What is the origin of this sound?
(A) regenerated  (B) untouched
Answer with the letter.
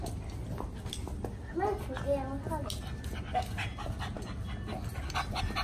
B